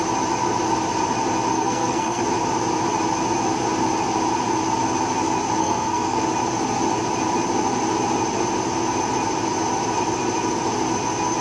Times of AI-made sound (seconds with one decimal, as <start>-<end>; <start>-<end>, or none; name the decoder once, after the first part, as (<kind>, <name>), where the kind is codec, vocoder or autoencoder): 1.5-2.2 (codec, SNAC); 5.6-6.2